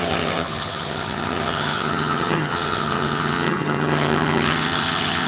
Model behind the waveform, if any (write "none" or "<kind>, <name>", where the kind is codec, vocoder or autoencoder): vocoder, HiFi-GAN